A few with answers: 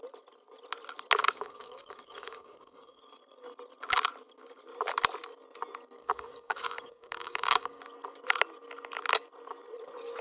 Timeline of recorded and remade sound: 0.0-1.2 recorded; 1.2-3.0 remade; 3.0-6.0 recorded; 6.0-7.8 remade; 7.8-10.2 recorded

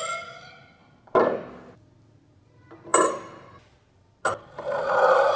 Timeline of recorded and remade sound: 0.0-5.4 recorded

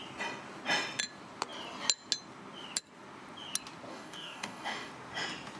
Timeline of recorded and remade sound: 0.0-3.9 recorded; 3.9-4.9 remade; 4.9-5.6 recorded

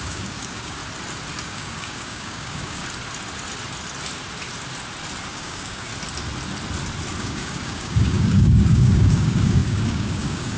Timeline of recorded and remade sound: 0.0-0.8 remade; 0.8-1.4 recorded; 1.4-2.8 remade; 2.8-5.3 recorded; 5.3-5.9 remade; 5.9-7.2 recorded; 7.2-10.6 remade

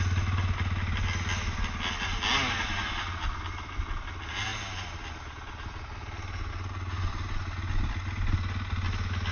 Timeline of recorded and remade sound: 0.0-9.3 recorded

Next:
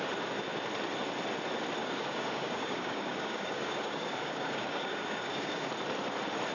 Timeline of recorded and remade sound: 0.0-1.8 recorded; 1.8-5.7 remade; 5.7-6.5 recorded

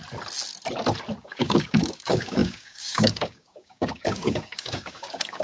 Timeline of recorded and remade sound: 0.0-1.2 recorded; 1.2-5.4 remade